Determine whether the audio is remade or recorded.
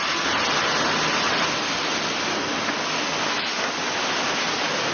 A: recorded